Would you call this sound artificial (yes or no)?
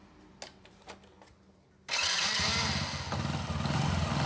no